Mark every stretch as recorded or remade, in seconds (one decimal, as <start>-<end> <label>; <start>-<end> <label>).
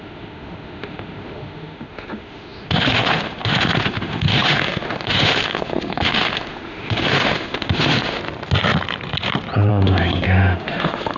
0.0-8.2 remade; 8.2-9.7 recorded; 9.7-11.2 remade